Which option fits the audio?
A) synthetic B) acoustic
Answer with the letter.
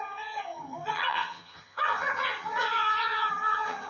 A